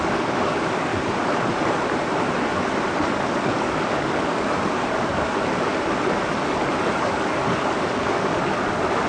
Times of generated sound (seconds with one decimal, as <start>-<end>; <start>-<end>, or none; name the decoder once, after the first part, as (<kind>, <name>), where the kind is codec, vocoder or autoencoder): 0.0-0.9 (codec, DAC); 3.2-5.7; 6.8-9.1